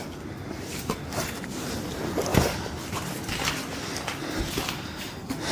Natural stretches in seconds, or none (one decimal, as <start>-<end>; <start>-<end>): 0.0-5.5